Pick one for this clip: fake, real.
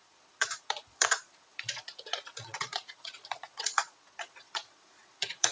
fake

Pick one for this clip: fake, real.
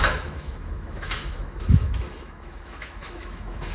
fake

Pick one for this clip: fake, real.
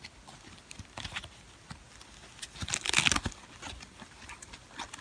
real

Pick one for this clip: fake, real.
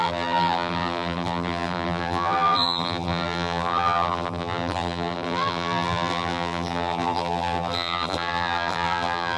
fake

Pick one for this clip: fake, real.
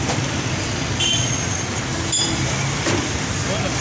real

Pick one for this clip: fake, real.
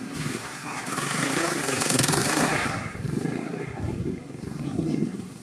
fake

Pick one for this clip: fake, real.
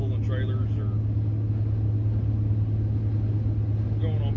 real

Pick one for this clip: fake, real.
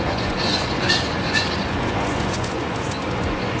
fake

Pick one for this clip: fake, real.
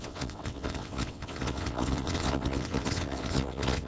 fake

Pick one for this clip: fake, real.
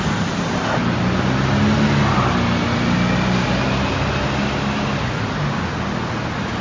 real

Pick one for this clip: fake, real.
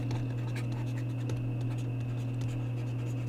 real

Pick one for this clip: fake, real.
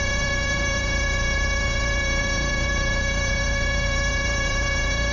fake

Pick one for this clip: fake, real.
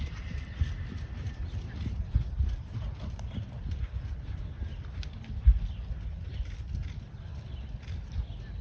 real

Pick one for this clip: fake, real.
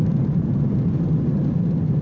fake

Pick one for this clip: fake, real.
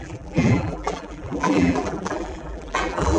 fake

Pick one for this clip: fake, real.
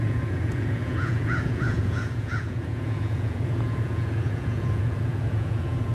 fake